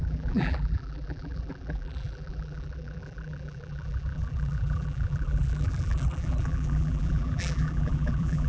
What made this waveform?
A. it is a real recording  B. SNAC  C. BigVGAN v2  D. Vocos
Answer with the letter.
C